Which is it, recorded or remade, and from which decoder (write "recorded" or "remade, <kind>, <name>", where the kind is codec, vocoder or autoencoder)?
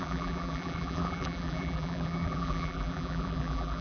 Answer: remade, vocoder, BigVGAN v2